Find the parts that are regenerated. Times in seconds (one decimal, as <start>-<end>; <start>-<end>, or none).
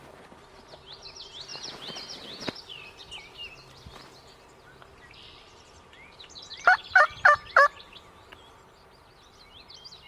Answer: none